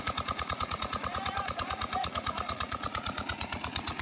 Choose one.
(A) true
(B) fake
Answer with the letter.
B